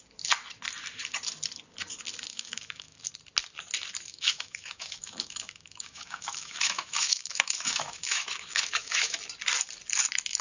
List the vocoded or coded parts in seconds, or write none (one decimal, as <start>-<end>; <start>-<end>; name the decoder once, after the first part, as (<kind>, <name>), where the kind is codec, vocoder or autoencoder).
2.3-3.1 (autoencoder, DAC-VAE); 4.1-9.2